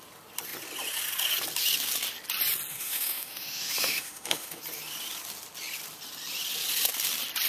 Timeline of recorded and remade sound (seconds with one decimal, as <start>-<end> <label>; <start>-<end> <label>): 0.0-2.7 recorded; 2.7-4.6 remade; 4.6-7.5 recorded